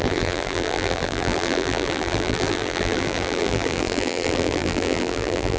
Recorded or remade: remade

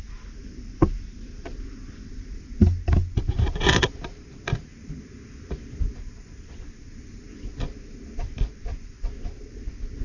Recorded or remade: recorded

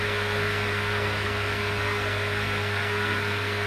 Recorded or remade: remade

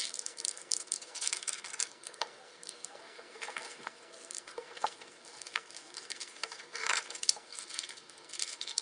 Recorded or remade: remade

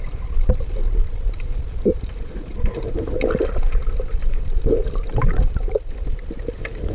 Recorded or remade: recorded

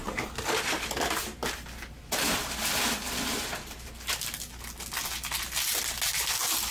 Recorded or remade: recorded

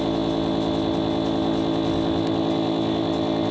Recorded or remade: recorded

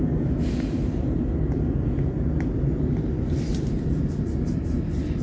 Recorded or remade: recorded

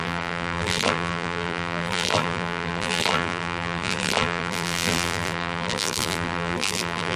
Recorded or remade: remade